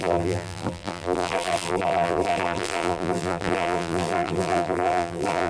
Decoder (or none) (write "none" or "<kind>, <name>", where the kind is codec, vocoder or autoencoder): vocoder, BigVGAN v2